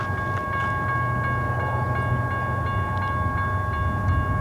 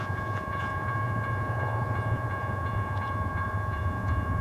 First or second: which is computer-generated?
second